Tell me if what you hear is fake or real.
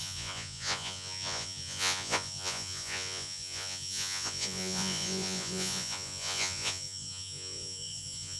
fake